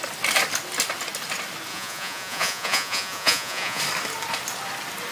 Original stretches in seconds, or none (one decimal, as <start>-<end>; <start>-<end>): 0.0-1.7; 3.8-5.1